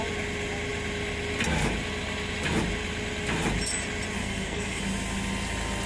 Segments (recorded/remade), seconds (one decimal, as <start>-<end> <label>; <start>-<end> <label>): 0.0-4.2 recorded; 4.2-4.8 remade; 4.8-5.9 recorded

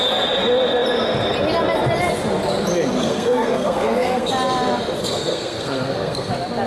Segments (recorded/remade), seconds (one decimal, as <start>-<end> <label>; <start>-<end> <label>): 0.0-3.0 recorded; 3.0-4.3 remade; 4.3-5.0 recorded; 5.0-6.3 remade; 6.3-6.7 recorded

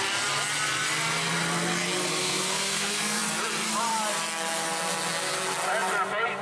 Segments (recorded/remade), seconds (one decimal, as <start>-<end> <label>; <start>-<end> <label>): 0.0-2.2 recorded; 2.2-3.2 remade; 3.2-6.4 recorded